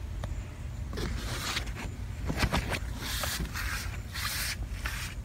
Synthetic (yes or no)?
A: no